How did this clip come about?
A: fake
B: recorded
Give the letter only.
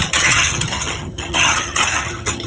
A